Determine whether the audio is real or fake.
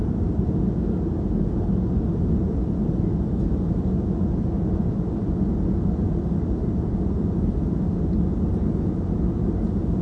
real